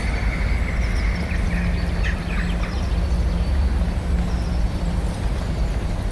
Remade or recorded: recorded